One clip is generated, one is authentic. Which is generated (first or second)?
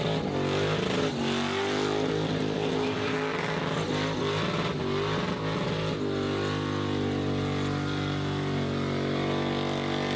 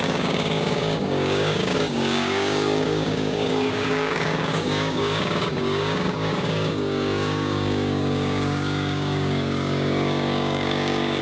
second